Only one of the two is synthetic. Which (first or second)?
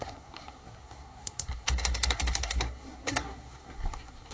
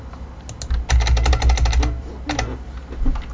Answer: first